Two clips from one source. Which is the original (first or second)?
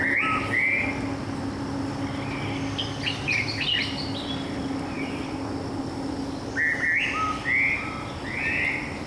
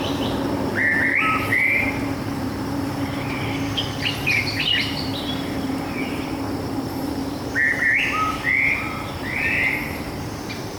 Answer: first